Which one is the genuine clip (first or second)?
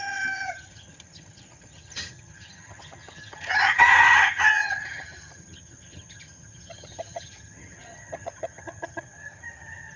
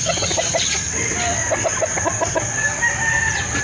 second